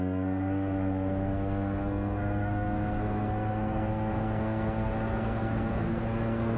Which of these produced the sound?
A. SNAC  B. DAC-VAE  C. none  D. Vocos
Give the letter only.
A